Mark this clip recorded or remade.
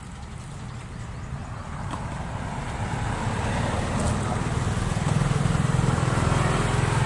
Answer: recorded